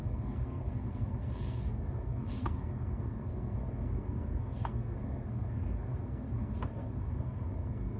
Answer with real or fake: fake